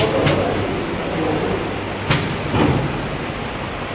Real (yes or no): yes